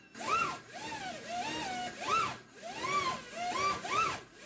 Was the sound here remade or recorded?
recorded